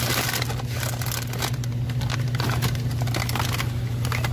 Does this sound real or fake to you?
real